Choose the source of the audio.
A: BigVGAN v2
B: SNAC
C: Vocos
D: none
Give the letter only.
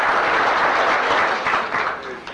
D